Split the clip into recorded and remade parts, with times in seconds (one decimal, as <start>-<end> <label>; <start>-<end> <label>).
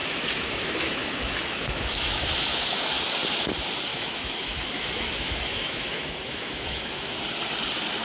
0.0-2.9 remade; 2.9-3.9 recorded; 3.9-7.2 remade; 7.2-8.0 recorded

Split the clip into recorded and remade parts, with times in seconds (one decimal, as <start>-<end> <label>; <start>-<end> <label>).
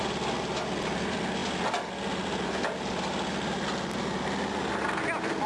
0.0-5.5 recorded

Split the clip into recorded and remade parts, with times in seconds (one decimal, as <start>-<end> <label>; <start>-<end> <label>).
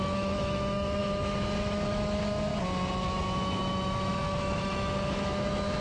0.0-2.5 remade; 2.5-3.0 recorded; 3.0-5.8 remade